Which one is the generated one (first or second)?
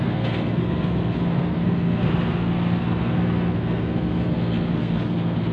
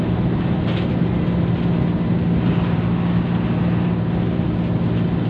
first